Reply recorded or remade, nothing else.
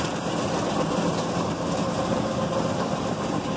remade